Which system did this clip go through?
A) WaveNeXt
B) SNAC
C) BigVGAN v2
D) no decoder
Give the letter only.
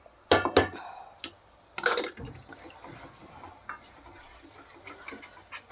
D